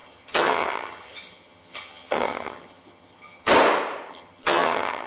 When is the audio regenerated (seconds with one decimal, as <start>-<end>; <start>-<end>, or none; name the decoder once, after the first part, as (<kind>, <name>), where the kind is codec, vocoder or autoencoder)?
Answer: 0.0-3.5 (vocoder, HiFi-GAN); 4.1-5.1